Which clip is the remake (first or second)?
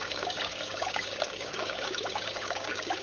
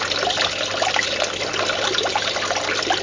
first